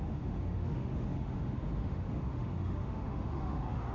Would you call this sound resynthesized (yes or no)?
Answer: yes